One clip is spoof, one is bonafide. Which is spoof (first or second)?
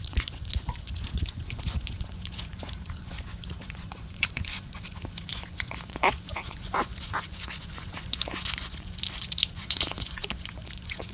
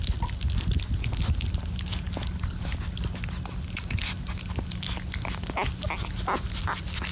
first